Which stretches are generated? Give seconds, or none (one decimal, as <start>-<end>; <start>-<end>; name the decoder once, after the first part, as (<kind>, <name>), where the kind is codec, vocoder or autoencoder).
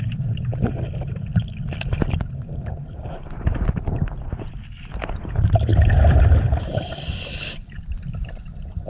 0.0-0.5 (vocoder, BigVGAN v2); 2.9-5.7; 6.6-8.9